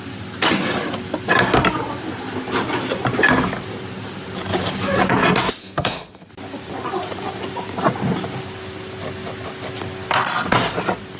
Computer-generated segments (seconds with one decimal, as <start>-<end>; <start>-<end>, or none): 5.6-6.3